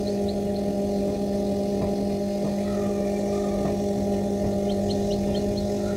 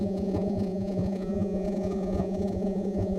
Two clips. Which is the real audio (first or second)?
first